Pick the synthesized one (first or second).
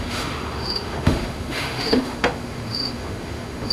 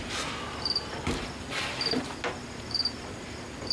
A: first